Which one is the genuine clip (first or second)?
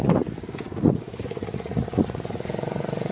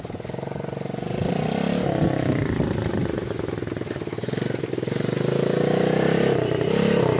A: second